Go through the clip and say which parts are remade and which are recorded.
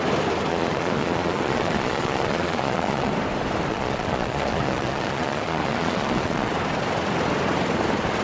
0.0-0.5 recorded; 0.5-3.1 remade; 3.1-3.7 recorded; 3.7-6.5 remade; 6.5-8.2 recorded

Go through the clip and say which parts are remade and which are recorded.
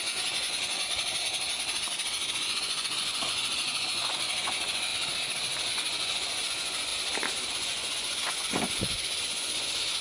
0.0-1.0 remade; 1.0-2.3 recorded; 2.3-4.9 remade; 4.9-5.7 recorded; 5.7-6.9 remade; 6.9-7.5 recorded; 7.5-10.0 remade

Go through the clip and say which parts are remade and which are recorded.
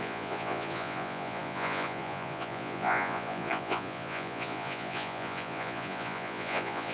0.0-6.9 remade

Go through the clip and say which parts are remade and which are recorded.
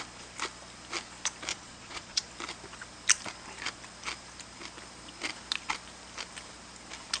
0.0-1.5 recorded; 1.5-2.3 remade; 2.3-7.2 recorded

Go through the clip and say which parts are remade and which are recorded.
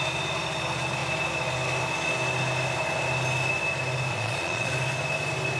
0.0-4.1 recorded; 4.1-4.7 remade; 4.7-5.6 recorded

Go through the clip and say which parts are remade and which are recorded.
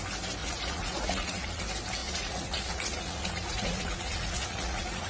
0.0-0.4 recorded; 0.4-1.6 remade; 1.6-2.0 recorded; 2.0-5.1 remade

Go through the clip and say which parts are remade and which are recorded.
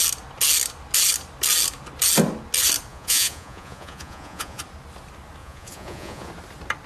0.0-2.9 recorded; 2.9-4.6 remade; 4.6-5.4 recorded; 5.4-6.3 remade; 6.3-6.9 recorded